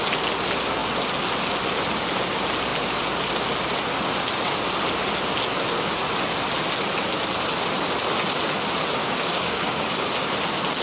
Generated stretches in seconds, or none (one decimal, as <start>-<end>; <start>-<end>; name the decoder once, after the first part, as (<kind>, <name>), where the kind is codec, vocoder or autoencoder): 9.0-9.9 (codec, DAC)